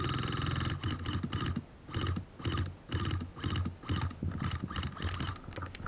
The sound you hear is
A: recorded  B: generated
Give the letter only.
A